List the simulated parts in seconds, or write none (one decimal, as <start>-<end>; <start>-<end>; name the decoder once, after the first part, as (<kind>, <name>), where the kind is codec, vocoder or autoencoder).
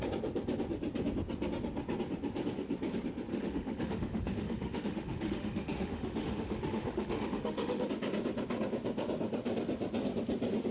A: 3.3-7.9 (autoencoder, DAC-VAE)